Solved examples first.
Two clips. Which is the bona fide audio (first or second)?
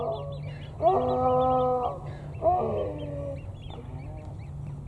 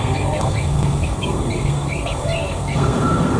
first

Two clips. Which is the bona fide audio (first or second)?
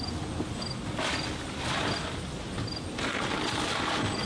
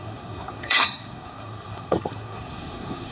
first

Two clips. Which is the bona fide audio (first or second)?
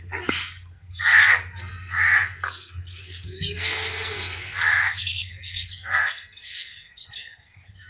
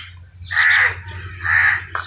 second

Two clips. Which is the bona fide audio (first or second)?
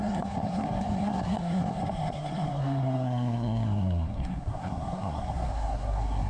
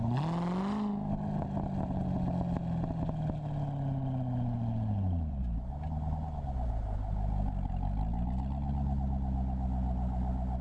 second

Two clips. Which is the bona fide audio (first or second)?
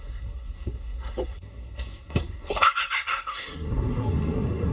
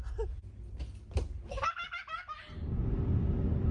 second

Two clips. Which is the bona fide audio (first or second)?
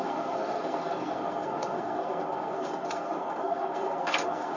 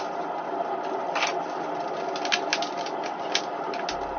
second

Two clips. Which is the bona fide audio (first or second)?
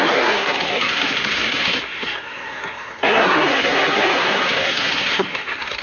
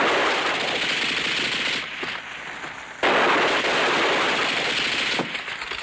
second